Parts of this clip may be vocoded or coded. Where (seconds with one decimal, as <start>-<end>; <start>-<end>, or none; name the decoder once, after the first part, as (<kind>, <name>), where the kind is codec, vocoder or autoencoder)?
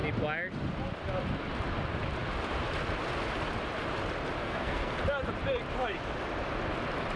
4.4-5.0 (codec, SNAC)